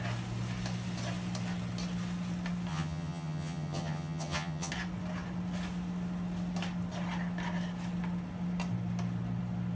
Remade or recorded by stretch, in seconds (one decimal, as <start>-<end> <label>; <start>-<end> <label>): 0.0-2.7 recorded; 2.7-4.7 remade; 4.7-9.8 recorded